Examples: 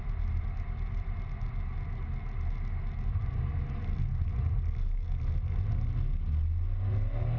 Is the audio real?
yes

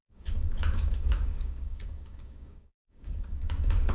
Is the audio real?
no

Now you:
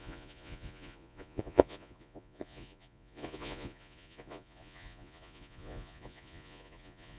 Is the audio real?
no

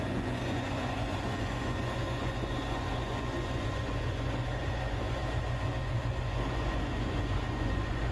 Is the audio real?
no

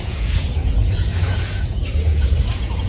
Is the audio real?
no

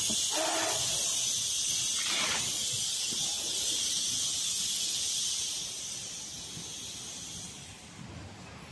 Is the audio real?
yes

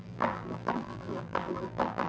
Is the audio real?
no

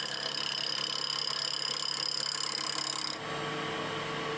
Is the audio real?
yes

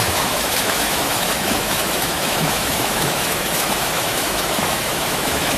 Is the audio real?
no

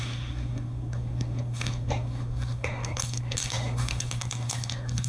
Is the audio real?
no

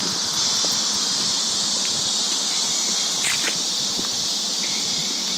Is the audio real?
yes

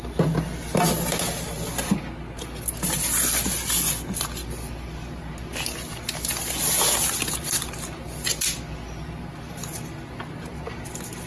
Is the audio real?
yes